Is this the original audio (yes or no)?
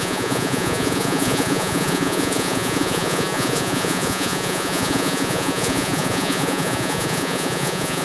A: no